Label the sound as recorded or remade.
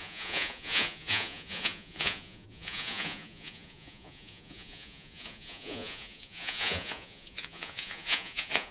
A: remade